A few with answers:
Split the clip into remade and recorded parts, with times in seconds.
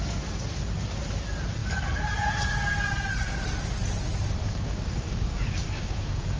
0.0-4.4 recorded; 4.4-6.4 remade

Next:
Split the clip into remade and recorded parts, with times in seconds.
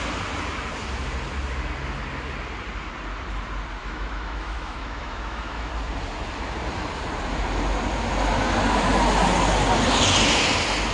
0.0-3.8 recorded; 3.8-5.7 remade; 5.7-10.9 recorded